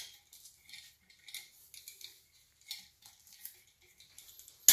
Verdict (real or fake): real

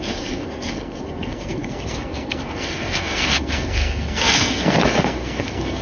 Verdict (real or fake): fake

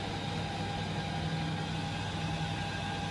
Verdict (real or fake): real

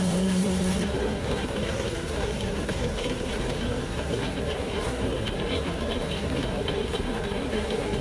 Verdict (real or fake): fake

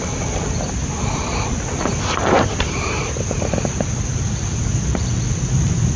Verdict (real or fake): real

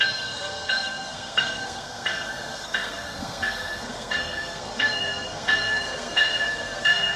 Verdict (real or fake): fake